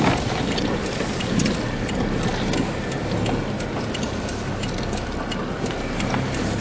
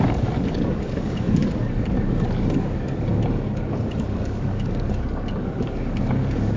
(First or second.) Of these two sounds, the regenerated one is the second